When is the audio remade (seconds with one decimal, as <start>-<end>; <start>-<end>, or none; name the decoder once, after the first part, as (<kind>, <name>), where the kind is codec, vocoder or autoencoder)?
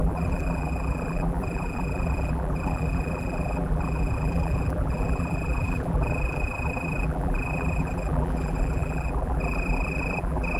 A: 0.0-10.6 (vocoder, BigVGAN v2)